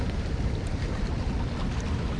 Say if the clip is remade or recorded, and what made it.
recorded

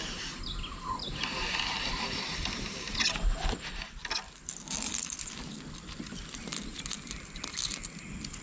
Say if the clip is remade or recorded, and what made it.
recorded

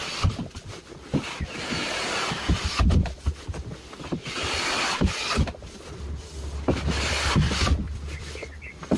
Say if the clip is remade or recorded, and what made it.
recorded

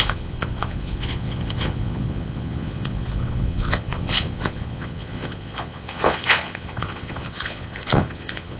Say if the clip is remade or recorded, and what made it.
remade, vocoder, Vocos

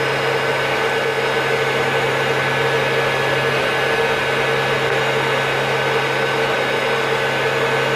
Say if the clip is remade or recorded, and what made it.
recorded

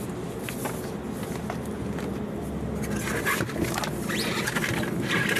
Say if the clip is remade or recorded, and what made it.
recorded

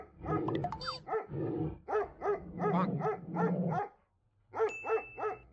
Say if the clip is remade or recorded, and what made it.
recorded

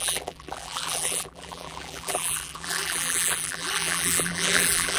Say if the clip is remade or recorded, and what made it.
remade, vocoder, BigVGAN v2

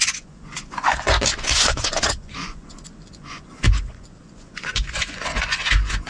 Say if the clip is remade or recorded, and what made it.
remade, vocoder, Vocos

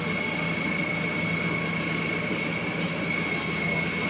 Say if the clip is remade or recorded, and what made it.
recorded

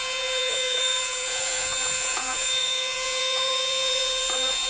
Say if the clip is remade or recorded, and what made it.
remade, vocoder, Vocos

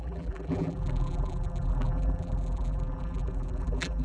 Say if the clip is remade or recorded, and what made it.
remade, vocoder, BigVGAN v2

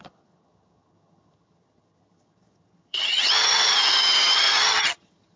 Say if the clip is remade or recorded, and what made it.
remade, vocoder, HiFi-GAN